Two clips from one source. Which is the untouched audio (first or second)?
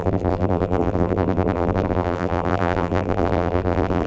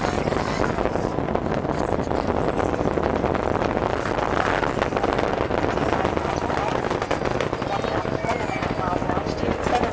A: second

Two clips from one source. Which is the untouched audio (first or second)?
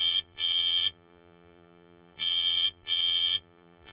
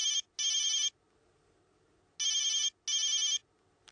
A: second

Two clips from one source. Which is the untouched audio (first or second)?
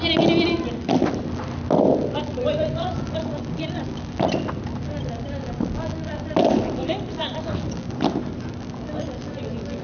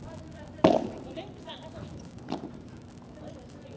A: first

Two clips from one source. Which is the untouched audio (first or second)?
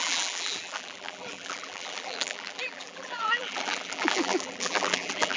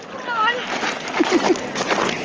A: second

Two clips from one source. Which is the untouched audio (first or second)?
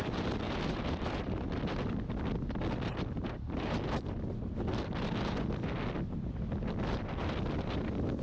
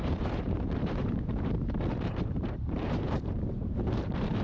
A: first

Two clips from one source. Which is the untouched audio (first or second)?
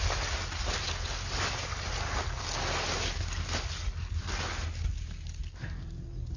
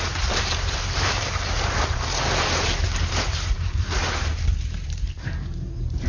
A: first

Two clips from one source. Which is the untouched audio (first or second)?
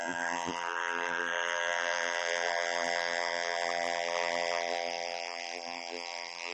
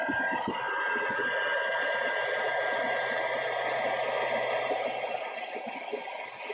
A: second